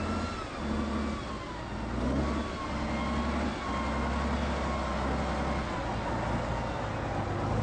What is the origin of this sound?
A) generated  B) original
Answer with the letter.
B